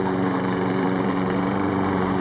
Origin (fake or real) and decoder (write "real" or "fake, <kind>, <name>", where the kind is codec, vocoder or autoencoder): fake, vocoder, BigVGAN v2